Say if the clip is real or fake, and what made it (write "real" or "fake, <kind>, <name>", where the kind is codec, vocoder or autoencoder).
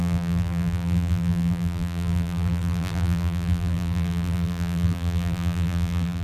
fake, vocoder, BigVGAN v2